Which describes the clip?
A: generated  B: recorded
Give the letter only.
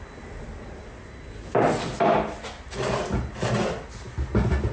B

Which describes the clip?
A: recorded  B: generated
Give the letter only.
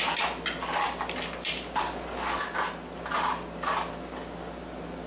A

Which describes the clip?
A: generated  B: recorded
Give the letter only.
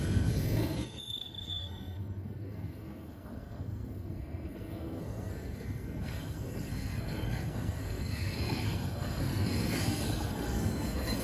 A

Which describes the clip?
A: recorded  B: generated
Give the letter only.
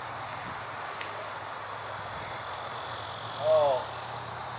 A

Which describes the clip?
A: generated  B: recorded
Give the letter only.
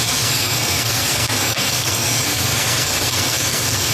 A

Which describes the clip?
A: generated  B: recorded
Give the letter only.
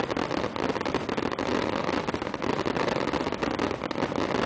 B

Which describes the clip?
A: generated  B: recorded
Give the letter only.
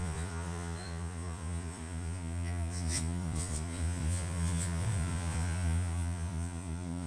A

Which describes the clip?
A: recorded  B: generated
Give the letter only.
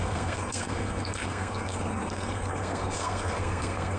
B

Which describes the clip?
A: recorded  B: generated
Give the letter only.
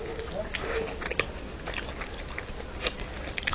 A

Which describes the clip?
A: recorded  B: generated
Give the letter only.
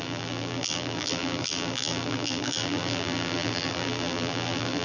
B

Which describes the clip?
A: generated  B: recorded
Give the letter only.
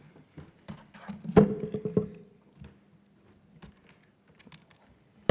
B